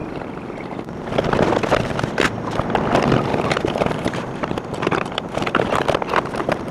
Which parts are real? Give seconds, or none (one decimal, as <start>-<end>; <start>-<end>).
1.1-3.3; 5.4-6.7